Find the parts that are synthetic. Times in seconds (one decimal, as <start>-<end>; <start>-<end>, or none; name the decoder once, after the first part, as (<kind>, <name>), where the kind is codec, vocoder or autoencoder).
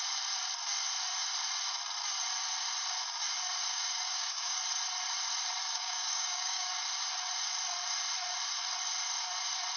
3.7-4.6 (codec, DAC); 5.6-6.7